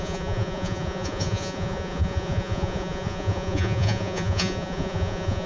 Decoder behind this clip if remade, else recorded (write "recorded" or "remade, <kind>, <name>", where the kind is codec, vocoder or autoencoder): remade, vocoder, Vocos